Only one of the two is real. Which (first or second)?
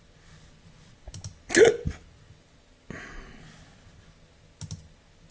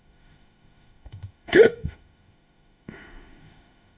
first